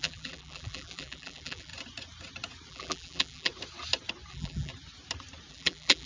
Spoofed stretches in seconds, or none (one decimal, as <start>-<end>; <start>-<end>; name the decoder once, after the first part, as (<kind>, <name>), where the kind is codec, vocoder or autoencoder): 0.0-1.7 (vocoder, BigVGAN v2); 2.7-3.5; 4.3-4.7; 5.5-6.1